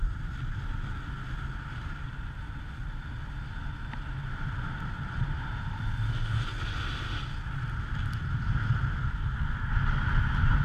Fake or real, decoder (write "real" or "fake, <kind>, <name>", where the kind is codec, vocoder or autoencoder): real